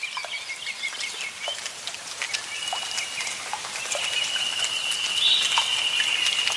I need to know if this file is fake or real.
real